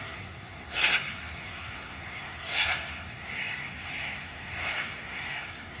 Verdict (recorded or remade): remade